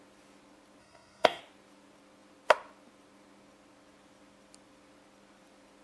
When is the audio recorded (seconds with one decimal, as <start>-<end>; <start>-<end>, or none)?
0.0-0.8; 1.4-5.8